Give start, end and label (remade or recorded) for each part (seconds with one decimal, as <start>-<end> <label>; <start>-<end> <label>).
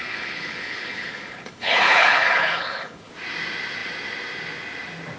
0.0-3.1 remade; 3.1-5.2 recorded